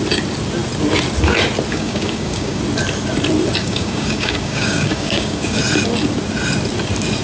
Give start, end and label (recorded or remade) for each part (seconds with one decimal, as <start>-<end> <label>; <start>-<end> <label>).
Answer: 0.0-1.7 recorded; 1.7-2.6 remade; 2.6-3.6 recorded; 3.6-5.6 remade; 5.6-7.2 recorded